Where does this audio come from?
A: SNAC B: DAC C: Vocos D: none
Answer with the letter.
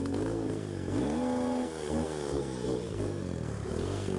A